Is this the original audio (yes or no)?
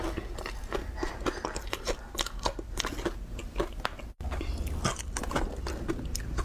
yes